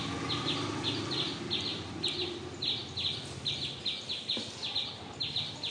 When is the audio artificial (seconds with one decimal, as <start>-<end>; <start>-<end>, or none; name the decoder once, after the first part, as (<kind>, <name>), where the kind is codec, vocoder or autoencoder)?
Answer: none